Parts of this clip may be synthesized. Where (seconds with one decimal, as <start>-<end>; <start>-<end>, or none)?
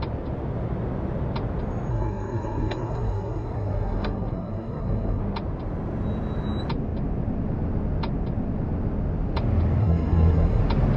1.9-5.2; 9.8-10.6